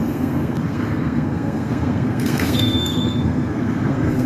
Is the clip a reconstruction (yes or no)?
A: yes